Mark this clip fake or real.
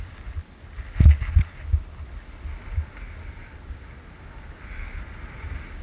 real